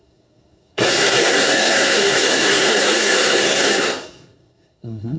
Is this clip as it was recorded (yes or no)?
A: no